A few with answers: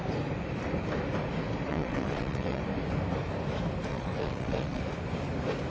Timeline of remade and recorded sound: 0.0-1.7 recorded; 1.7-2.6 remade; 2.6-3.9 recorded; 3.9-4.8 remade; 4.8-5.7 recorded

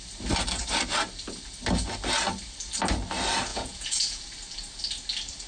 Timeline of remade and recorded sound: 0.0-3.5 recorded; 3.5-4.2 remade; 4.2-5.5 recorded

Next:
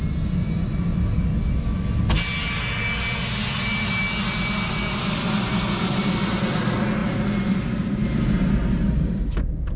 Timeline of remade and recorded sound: 0.0-9.8 recorded